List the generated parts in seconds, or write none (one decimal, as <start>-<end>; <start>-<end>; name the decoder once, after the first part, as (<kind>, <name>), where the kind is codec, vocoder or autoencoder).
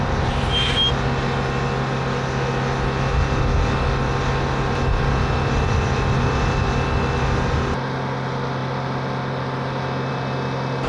none